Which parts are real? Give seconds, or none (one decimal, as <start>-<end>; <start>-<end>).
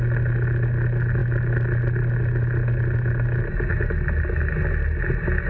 0.0-5.5